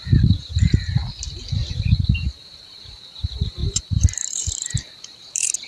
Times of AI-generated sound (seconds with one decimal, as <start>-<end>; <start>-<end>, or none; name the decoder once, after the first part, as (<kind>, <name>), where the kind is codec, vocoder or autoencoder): 0.0-1.0 (vocoder, BigVGAN v2); 1.7-5.7